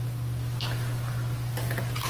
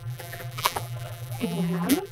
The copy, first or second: second